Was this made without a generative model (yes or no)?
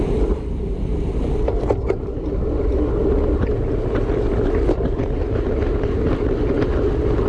yes